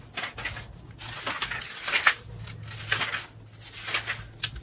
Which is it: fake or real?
real